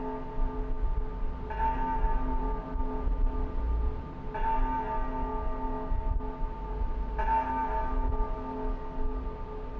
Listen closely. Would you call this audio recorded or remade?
recorded